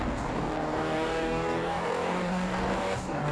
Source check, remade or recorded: remade